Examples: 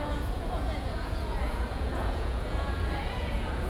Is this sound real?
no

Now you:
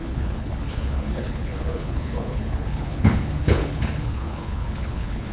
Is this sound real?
no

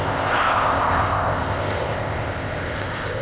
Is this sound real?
no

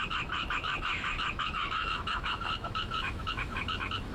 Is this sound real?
no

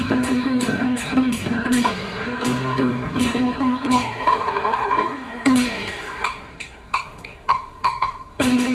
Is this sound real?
no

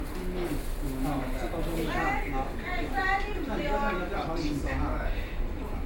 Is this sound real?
yes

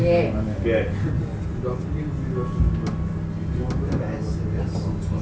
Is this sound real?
yes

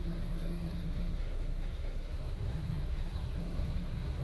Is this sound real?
no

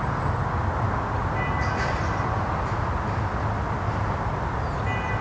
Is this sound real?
yes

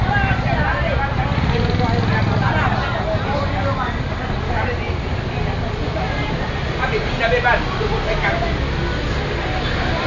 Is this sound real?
yes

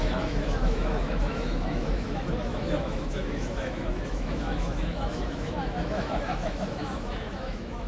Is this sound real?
no